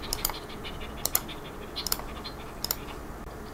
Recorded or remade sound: remade